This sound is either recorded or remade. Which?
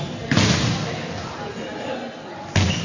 recorded